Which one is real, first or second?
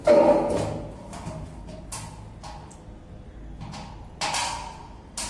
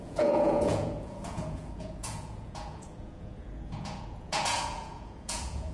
first